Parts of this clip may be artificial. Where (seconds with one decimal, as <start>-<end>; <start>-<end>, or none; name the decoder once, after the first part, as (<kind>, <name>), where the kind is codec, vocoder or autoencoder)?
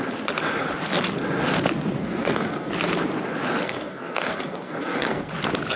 2.0-2.7 (codec, SNAC); 3.6-5.3